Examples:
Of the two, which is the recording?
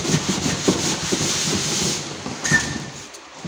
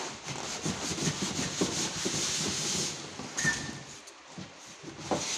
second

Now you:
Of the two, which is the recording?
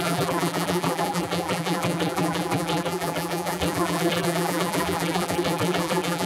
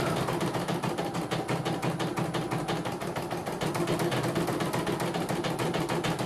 second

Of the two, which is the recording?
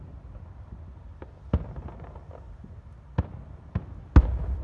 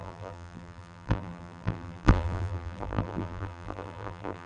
first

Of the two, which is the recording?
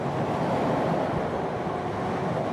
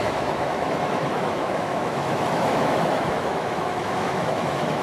first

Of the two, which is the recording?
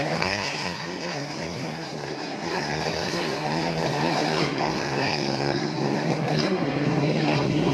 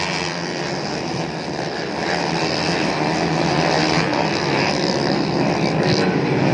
second